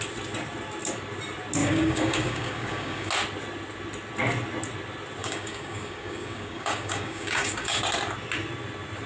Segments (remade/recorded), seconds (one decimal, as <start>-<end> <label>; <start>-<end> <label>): 0.0-1.6 recorded; 1.6-3.1 remade; 3.1-5.2 recorded; 5.2-7.8 remade; 7.8-9.1 recorded